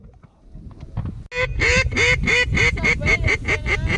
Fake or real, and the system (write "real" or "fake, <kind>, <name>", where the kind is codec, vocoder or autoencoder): real